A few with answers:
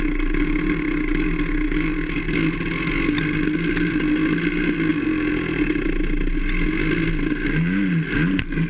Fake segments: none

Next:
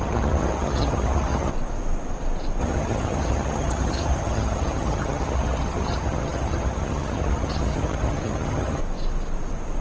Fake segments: 0.0-1.5 (vocoder, HiFi-GAN); 2.6-8.8

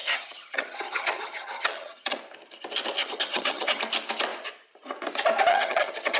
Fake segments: 0.0-2.2 (vocoder, HiFi-GAN); 3.0-3.8; 5.5-6.2